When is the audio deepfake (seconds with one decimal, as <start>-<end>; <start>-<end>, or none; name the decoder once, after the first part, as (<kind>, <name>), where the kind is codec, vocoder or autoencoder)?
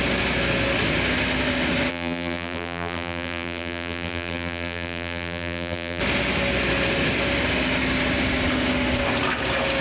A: 1.9-6.0 (vocoder, BigVGAN v2)